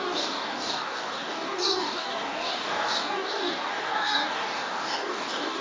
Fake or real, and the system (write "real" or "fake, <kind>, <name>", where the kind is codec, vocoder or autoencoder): fake, codec, DAC